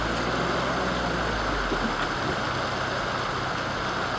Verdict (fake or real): real